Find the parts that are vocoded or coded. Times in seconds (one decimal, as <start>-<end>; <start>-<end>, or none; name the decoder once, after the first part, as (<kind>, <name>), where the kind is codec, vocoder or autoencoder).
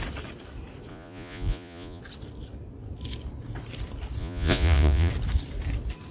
0.9-2.0 (vocoder, Vocos); 4.2-5.1